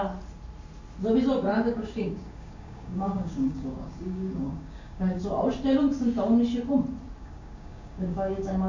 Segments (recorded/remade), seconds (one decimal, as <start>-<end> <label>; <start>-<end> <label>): 0.0-1.5 recorded; 1.5-5.2 remade; 5.2-7.2 recorded; 7.2-8.7 remade